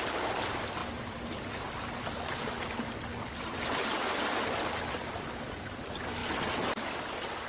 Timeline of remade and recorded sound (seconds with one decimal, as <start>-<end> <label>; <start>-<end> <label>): 0.0-7.5 recorded